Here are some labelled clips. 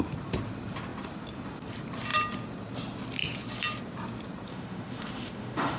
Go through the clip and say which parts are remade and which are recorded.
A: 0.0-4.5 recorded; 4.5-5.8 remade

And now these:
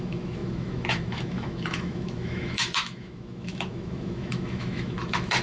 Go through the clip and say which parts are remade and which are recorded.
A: 0.0-5.4 remade

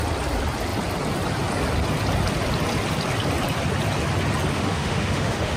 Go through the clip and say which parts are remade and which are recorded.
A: 0.0-4.5 recorded; 4.5-5.6 remade

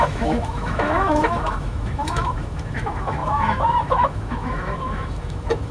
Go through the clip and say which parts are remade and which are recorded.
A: 0.0-5.7 remade

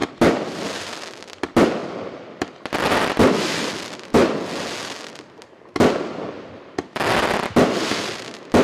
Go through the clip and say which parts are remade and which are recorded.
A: 0.0-8.6 recorded

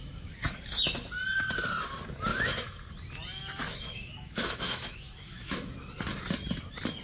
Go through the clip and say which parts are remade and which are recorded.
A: 0.0-1.1 remade; 1.1-2.3 recorded; 2.3-2.9 remade; 2.9-3.6 recorded; 3.6-5.8 remade; 5.8-7.0 recorded